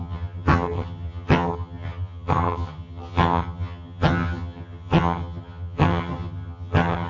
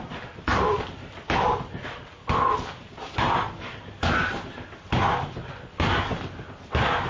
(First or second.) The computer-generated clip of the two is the first